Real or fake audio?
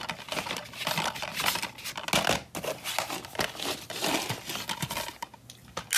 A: real